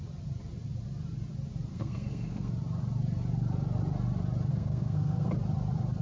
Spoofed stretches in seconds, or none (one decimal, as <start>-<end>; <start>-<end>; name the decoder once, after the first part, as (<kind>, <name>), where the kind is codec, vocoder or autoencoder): 1.7-2.5 (codec, SNAC); 4.5-5.3